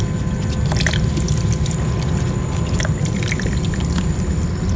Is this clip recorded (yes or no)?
yes